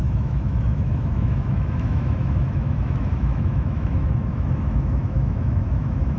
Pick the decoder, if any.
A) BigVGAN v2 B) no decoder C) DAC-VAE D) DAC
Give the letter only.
C